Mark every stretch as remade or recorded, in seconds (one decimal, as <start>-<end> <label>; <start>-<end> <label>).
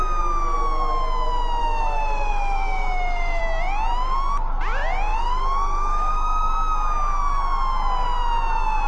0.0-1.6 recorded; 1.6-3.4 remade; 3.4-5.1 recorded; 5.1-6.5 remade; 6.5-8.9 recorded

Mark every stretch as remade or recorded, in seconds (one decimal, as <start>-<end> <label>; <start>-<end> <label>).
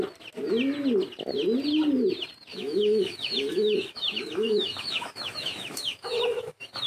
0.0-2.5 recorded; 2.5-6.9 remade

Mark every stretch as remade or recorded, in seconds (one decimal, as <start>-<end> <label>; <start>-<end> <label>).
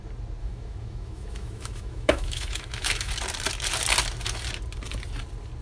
0.0-0.4 recorded; 0.4-3.1 remade; 3.1-5.6 recorded